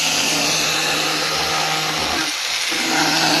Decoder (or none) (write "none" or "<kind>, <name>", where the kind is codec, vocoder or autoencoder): none